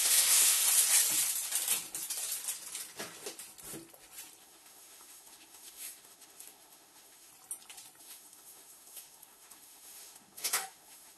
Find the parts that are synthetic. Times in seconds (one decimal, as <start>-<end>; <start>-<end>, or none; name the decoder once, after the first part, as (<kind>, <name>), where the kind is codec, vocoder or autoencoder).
0.0-0.6 (autoencoder, DAC-VAE); 4.4-7.3; 8.0-11.2